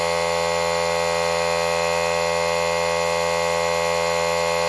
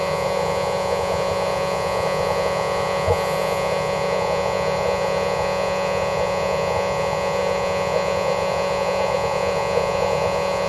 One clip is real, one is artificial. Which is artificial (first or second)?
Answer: second